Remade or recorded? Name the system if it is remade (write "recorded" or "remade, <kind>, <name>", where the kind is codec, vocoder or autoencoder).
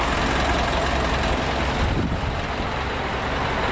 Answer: recorded